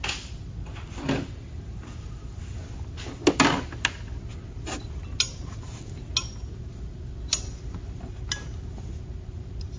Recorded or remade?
recorded